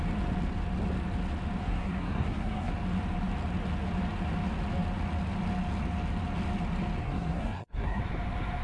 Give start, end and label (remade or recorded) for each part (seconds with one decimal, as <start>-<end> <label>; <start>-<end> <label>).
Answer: 0.0-1.6 recorded; 1.6-2.7 remade; 2.7-7.0 recorded; 7.0-8.0 remade; 8.0-8.6 recorded